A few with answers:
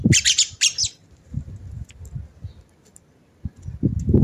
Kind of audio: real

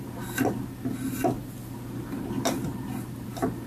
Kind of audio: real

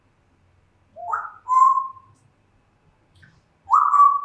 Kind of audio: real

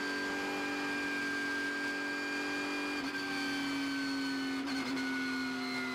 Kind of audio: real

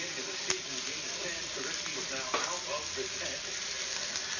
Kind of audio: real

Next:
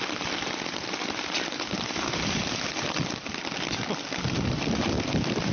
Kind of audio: real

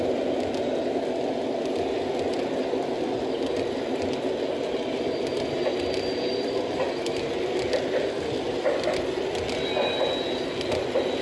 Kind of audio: real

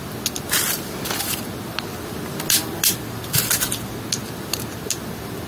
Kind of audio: real